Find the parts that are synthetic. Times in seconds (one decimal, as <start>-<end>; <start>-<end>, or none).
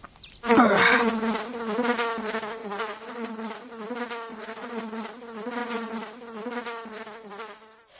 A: 2.6-3.7; 4.3-5.1